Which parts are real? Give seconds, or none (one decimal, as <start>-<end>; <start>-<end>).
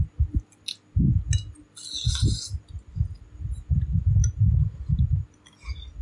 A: 0.0-6.0